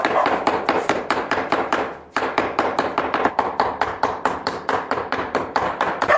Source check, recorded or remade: remade